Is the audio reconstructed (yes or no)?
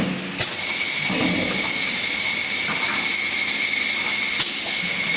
no